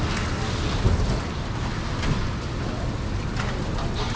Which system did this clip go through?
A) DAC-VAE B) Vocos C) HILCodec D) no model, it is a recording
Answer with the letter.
D